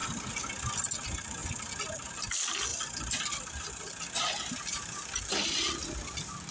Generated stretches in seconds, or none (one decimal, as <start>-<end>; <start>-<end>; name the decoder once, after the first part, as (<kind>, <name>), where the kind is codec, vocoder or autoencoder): none